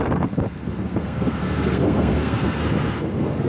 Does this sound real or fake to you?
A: fake